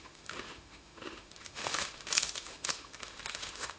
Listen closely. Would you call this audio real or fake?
fake